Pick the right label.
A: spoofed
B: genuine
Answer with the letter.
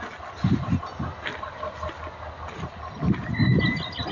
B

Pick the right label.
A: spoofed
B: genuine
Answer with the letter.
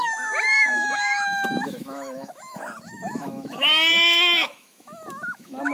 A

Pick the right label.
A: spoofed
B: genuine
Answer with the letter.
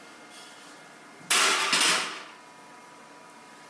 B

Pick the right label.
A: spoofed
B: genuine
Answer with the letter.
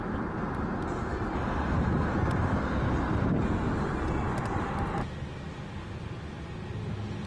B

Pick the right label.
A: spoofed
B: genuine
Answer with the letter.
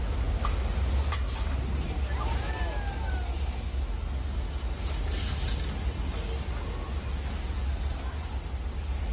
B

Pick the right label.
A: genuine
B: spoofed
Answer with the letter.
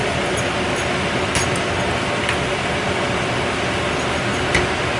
A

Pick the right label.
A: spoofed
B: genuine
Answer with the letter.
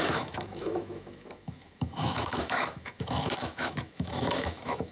A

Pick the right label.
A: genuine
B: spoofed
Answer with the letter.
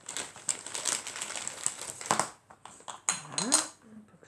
A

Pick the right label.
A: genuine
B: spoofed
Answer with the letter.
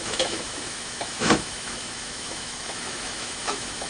B